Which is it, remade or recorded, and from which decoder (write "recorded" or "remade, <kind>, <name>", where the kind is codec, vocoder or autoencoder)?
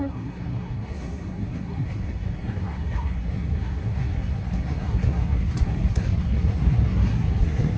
remade, codec, SNAC